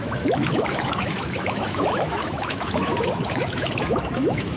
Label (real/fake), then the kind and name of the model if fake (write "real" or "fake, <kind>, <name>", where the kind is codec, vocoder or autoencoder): fake, autoencoder, DAC-VAE